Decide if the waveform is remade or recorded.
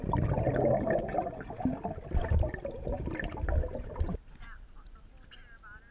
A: recorded